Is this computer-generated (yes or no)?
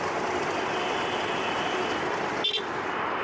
yes